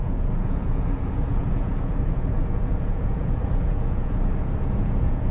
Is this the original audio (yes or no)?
no